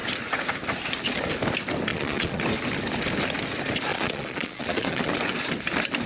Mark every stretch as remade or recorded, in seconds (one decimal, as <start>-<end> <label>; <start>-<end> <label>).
0.0-1.9 recorded; 1.9-2.4 remade; 2.4-3.9 recorded; 3.9-5.1 remade; 5.1-6.1 recorded